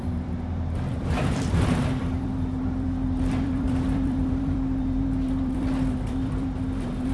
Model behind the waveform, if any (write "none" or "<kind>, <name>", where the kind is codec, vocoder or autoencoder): vocoder, BigVGAN v2